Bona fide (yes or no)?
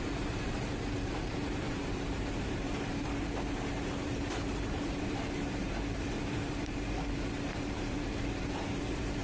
no